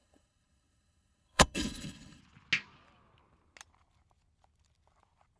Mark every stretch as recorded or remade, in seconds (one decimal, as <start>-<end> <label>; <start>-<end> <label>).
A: 0.0-2.2 remade; 2.2-5.4 recorded